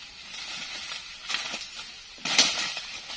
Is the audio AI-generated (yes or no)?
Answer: no